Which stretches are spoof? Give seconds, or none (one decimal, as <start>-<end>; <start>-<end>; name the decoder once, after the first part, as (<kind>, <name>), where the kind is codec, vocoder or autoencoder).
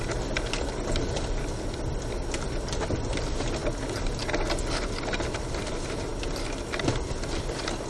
none